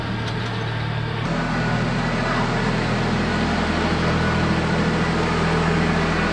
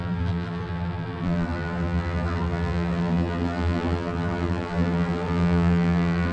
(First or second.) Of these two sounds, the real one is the first